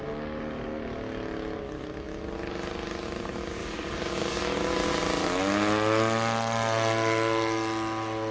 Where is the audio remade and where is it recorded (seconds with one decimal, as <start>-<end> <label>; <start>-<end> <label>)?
0.0-3.6 recorded; 3.6-4.4 remade; 4.4-8.3 recorded